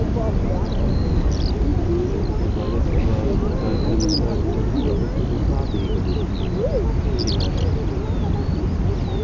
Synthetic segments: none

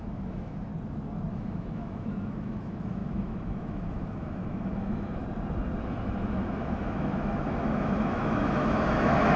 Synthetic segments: 0.0-0.7 (autoencoder, DAC-VAE); 1.3-5.2; 5.8-9.4

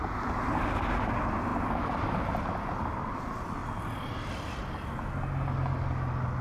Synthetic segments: none